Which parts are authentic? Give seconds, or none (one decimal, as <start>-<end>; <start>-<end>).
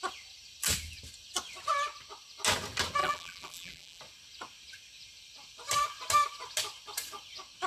0.0-3.0; 4.0-7.7